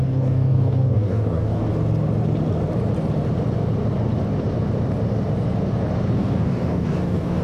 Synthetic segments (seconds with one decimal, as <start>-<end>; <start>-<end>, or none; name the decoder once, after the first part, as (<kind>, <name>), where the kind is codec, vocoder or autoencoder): 0.0-1.7 (codec, DAC); 6.1-7.4